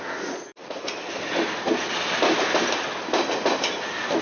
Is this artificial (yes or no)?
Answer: no